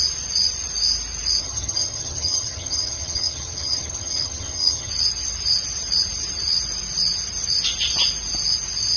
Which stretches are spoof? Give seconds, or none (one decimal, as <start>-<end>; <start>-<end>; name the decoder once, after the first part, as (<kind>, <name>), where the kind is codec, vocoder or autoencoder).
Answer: 1.4-4.9 (vocoder, HiFi-GAN)